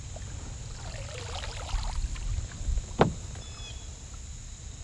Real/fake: real